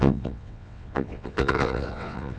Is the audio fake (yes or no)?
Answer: yes